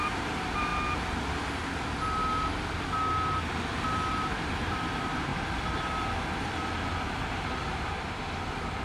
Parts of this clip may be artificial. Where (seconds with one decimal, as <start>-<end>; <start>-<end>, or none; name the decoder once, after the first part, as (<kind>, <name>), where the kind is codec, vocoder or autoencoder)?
0.0-0.7 (vocoder, BigVGAN v2); 4.1-5.3; 7.3-8.8

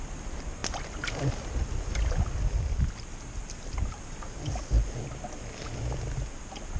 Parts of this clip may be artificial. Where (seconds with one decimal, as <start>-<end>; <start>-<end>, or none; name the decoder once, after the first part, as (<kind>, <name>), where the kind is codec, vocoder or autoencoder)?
none

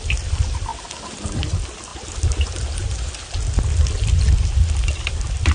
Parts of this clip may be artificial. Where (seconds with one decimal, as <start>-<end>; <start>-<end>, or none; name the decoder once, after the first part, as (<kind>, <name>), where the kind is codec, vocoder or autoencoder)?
none

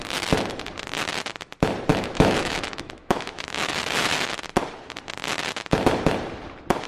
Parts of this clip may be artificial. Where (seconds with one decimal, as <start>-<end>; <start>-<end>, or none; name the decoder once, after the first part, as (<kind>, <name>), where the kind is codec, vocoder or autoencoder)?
1.9-3.7 (autoencoder, DAC-VAE)

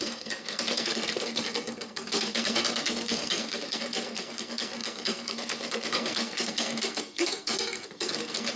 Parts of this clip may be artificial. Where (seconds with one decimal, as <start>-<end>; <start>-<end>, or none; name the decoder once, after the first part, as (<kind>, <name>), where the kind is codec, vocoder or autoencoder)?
0.0-8.6 (codec, SNAC)

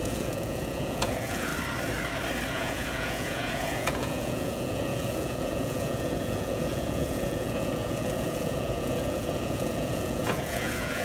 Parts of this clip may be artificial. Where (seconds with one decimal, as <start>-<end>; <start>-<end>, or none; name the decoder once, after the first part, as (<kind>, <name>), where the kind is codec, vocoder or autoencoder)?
0.0-1.5 (vocoder, Vocos); 2.5-11.0

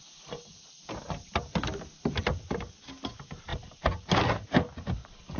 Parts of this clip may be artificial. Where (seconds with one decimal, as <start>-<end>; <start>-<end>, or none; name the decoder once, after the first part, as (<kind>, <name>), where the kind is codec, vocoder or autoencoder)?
none

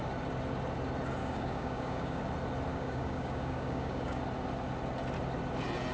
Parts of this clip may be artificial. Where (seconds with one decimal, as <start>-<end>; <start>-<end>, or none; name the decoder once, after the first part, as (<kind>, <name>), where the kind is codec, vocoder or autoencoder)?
1.2-2.2 (codec, DAC); 2.7-4.2